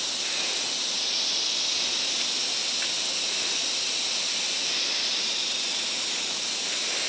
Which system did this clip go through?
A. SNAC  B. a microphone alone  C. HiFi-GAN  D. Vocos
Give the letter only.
B